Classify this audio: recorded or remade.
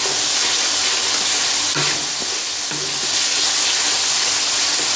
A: recorded